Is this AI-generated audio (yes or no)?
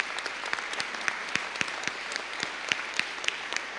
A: yes